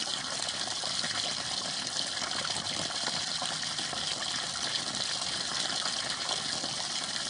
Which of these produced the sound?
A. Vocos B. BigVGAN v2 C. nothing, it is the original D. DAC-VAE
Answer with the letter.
C